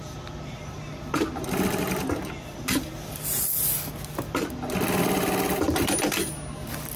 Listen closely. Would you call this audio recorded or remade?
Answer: recorded